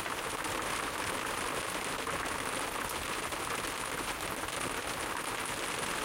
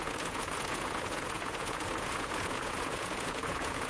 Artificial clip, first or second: second